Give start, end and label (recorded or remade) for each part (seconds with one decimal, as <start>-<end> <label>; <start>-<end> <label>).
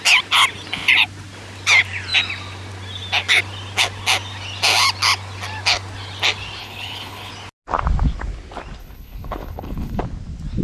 0.0-6.6 recorded; 6.6-7.3 remade; 7.3-8.8 recorded; 8.8-10.0 remade; 10.0-10.6 recorded